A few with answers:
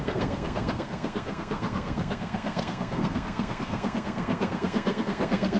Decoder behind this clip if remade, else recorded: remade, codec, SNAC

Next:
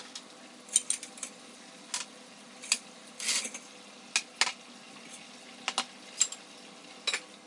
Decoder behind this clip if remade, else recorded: recorded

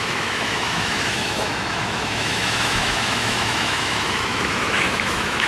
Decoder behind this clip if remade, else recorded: remade, autoencoder, DAC-VAE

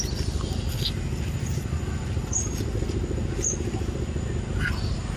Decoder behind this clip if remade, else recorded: recorded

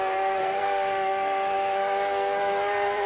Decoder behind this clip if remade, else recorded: remade, codec, SNAC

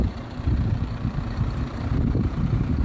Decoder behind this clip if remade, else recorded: remade, vocoder, BigVGAN v2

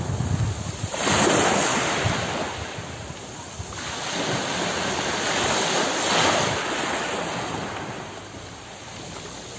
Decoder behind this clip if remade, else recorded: recorded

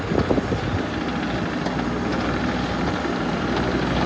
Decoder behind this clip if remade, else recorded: recorded